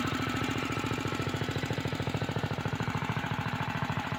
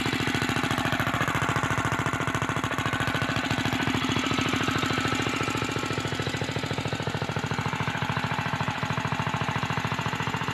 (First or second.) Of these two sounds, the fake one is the first